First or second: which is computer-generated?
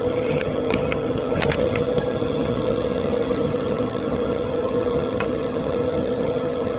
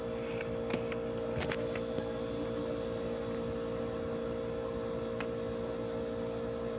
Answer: first